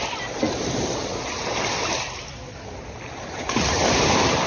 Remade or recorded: remade